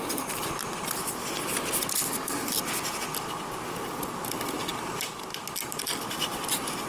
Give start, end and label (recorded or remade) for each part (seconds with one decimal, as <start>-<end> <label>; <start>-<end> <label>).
0.0-6.9 recorded